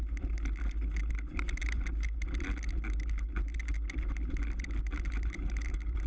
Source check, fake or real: real